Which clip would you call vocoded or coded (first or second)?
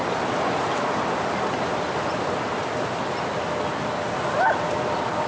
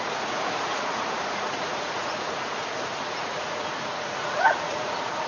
second